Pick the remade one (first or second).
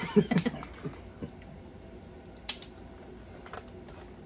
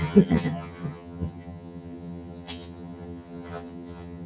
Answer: second